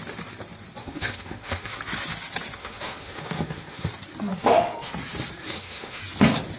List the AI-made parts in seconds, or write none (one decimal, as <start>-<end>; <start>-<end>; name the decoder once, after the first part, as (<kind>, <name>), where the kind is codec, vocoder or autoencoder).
0.8-1.8 (autoencoder, DAC-VAE); 2.6-3.9; 4.3-4.9; 5.4-6.0